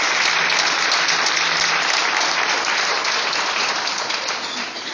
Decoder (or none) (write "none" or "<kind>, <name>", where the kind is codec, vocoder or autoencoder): none